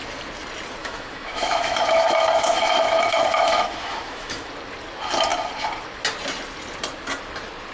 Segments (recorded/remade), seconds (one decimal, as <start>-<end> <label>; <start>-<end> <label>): 0.0-0.8 recorded; 0.8-4.5 remade; 4.5-7.7 recorded